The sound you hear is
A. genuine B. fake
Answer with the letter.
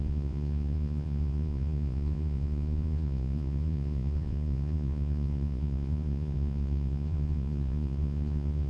B